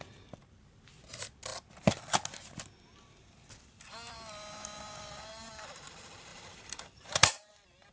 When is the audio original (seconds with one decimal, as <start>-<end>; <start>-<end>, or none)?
0.0-6.3